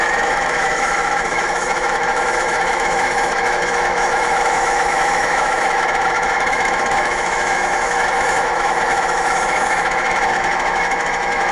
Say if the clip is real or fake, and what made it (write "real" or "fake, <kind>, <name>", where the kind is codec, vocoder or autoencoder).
fake, autoencoder, DAC-VAE